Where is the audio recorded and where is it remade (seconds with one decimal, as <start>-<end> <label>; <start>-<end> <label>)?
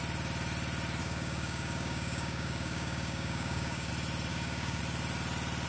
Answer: 0.0-1.0 recorded; 1.0-3.9 remade; 3.9-4.3 recorded; 4.3-4.8 remade; 4.8-5.7 recorded